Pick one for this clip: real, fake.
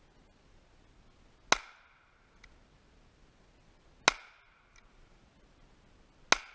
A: real